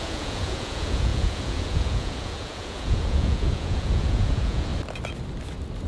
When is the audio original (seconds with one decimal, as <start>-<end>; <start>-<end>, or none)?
4.7-5.9

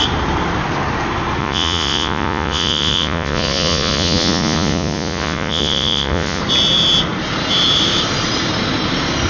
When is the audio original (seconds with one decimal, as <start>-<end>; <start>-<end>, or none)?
0.0-1.4; 6.4-9.3

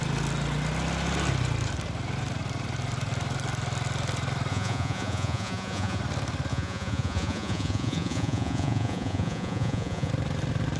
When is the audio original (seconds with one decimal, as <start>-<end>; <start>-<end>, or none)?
0.0-4.5; 6.0-6.5; 10.1-10.8

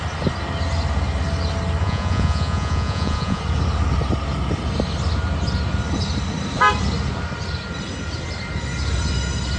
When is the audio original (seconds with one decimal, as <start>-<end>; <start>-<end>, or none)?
0.0-1.8; 3.4-9.6

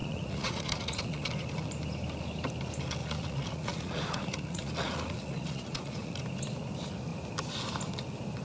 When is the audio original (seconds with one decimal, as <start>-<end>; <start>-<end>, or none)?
1.2-3.0; 6.2-8.4

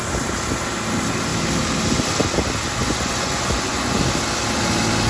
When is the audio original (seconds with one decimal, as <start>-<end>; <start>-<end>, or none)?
0.0-2.8; 4.0-5.1

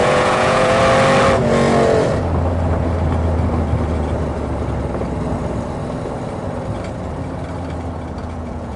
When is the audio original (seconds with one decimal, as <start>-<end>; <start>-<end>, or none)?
0.8-8.2